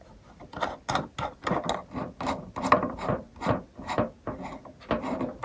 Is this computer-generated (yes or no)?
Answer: no